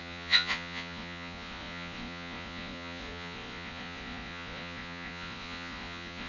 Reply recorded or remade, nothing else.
remade